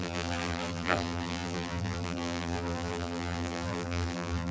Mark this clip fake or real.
fake